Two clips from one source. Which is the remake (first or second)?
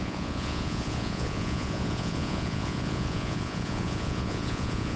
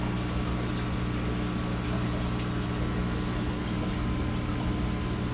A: first